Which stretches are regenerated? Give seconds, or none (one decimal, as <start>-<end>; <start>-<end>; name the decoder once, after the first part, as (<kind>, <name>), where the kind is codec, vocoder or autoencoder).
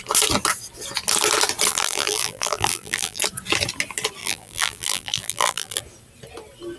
1.7-3.2 (vocoder, BigVGAN v2); 4.2-5.8